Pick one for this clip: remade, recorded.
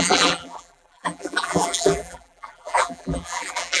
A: remade